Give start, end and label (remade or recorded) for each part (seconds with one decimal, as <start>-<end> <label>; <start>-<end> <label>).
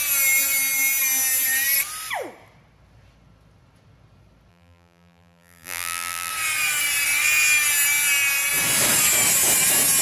0.0-4.5 recorded; 4.5-6.3 remade; 6.3-10.0 recorded